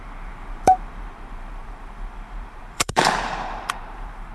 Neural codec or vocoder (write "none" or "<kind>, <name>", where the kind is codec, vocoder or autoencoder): vocoder, BigVGAN v2